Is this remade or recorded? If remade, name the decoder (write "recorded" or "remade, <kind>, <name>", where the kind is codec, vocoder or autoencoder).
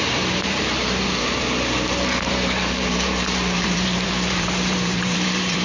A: remade, vocoder, BigVGAN v2